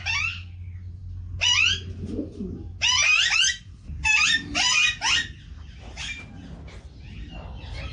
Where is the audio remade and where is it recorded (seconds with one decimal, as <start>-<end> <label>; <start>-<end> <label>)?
0.0-7.9 recorded